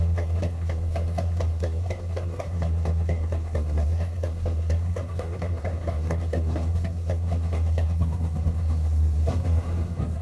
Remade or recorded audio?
remade